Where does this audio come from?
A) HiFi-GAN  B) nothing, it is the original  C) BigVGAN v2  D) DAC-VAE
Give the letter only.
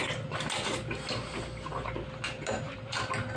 B